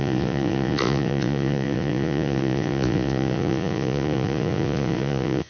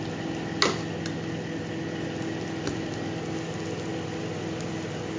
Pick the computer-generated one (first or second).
first